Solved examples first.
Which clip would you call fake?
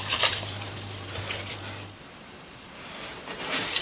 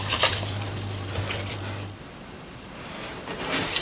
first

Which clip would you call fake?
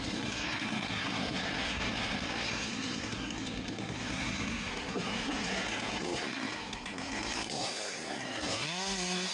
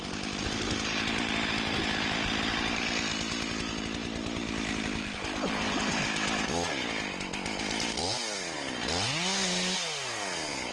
first